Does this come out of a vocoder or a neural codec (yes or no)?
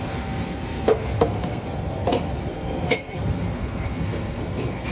yes